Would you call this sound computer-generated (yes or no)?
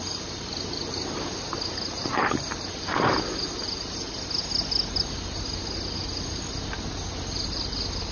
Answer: no